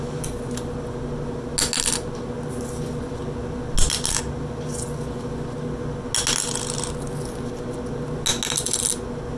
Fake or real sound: real